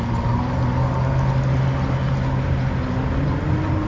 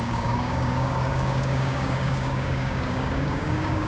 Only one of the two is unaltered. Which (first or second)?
first